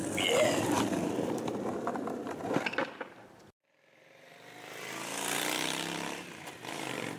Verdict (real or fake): fake